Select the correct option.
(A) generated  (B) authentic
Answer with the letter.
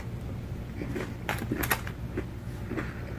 B